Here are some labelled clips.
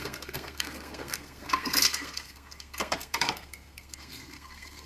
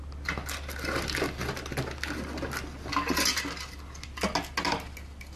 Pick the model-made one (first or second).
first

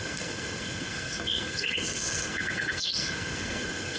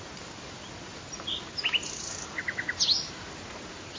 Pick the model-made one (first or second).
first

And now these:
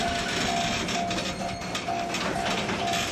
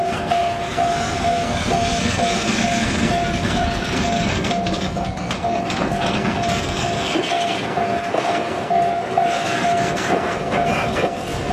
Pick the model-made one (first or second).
second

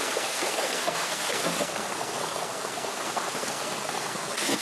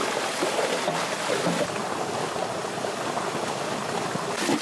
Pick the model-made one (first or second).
first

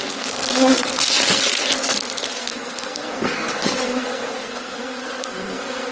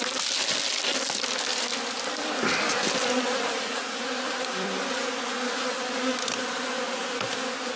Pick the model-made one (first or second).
first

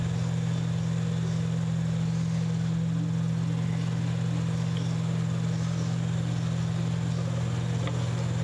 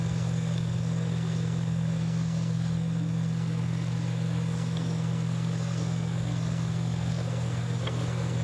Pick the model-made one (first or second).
second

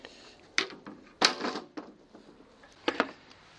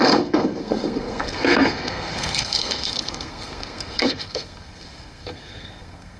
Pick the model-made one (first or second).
second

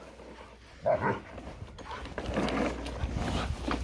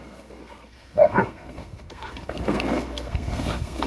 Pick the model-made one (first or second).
second